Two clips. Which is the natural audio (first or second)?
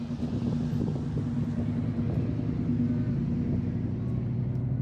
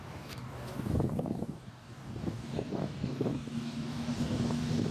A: first